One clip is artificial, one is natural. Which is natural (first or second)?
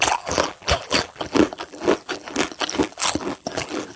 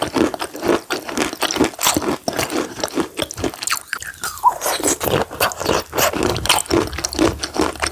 second